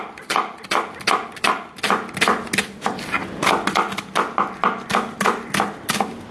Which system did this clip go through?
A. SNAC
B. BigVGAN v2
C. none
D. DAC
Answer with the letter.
C